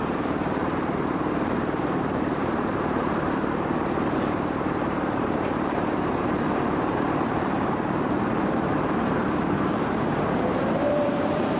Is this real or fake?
fake